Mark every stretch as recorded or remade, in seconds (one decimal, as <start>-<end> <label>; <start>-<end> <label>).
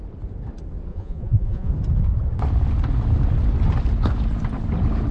0.0-0.9 recorded; 0.9-1.7 remade; 1.7-5.1 recorded